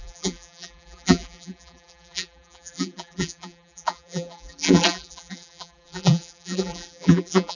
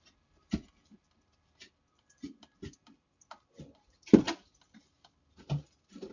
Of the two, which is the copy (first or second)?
first